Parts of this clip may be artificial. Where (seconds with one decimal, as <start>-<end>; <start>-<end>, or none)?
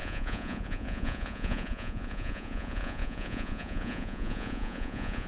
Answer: 0.0-5.3